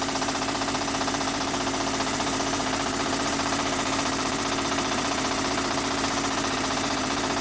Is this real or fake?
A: fake